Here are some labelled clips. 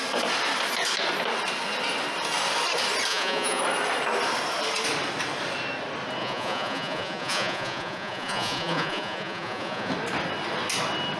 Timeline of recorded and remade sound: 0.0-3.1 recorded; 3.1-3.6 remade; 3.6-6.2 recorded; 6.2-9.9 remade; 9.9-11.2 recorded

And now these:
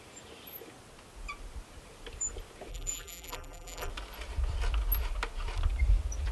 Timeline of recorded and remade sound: 0.0-2.7 recorded; 2.7-3.9 remade; 3.9-6.3 recorded

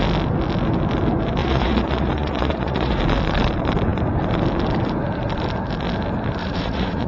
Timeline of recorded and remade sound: 0.0-1.4 recorded; 1.4-3.0 remade; 3.0-6.4 recorded; 6.4-7.1 remade